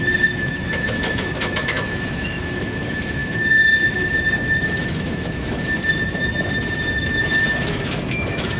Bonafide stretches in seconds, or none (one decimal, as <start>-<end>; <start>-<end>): none